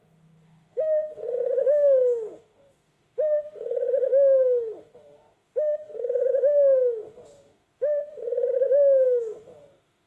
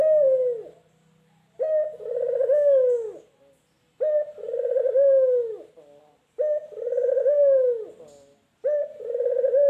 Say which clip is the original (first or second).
second